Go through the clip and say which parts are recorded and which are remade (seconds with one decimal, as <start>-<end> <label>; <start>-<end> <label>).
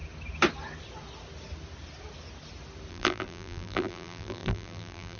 0.0-2.9 recorded; 2.9-5.2 remade